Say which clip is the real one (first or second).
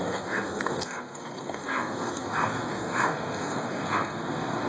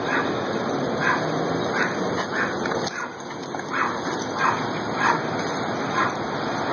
second